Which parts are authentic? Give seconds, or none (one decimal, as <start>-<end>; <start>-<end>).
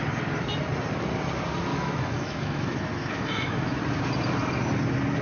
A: 0.0-1.7; 3.8-5.2